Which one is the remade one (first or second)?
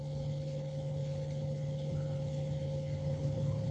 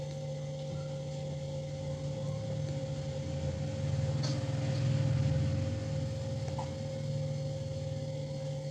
first